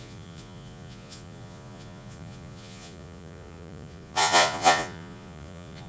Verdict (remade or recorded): remade